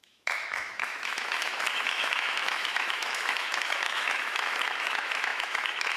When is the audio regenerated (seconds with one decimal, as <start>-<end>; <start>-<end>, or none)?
0.0-6.0